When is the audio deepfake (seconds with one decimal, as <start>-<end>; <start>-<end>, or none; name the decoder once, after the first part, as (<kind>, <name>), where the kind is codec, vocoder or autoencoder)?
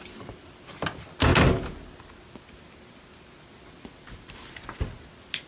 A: none